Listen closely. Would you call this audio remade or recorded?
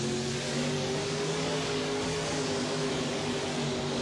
remade